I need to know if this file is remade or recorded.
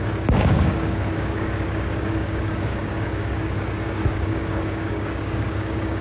remade